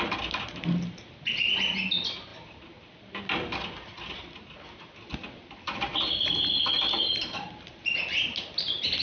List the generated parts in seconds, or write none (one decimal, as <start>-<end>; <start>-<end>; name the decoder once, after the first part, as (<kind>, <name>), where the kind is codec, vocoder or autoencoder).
none